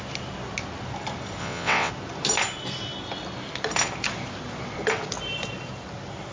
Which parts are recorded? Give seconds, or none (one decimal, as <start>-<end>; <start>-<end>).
0.0-1.4; 1.9-6.3